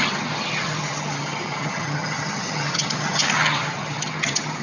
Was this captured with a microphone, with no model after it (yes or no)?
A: no